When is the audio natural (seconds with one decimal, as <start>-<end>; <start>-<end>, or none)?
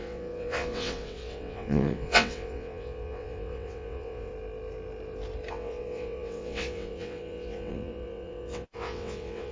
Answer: 4.3-5.5